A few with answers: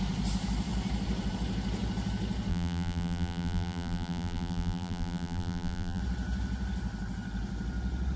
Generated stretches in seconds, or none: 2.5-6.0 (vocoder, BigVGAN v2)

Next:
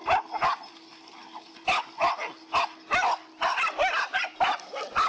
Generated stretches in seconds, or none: none

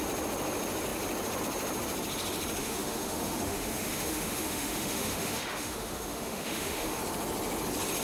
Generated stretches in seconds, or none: 2.6-7.0 (autoencoder, DAC-VAE)

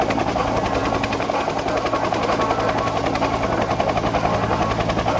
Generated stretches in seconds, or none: none

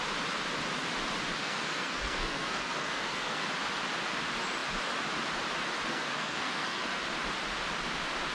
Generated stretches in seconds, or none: 1.4-3.5 (codec, SNAC); 5.9-7.0

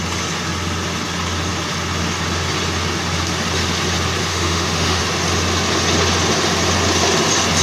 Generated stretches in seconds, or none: 4.3-5.0 (autoencoder, DAC-VAE)